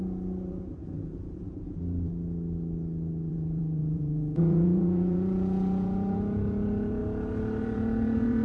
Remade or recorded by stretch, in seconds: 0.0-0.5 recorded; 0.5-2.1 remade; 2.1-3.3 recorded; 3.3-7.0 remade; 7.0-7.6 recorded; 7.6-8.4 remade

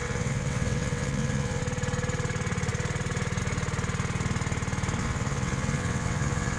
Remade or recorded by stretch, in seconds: 0.0-1.6 remade; 1.6-5.0 recorded; 5.0-6.6 remade

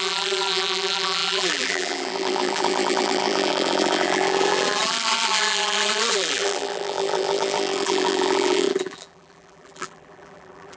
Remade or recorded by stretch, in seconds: 0.0-10.8 remade

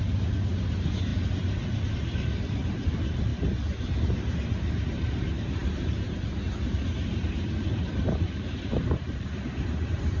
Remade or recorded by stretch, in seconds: 0.0-1.1 remade; 1.1-2.0 recorded; 2.0-3.3 remade; 3.3-4.0 recorded; 4.0-10.2 remade

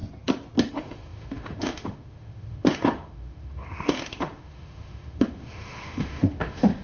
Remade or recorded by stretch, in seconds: 0.0-0.7 recorded; 0.7-6.8 remade

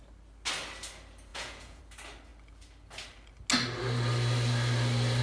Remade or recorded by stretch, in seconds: 0.0-1.3 recorded; 1.3-1.8 remade; 1.8-5.2 recorded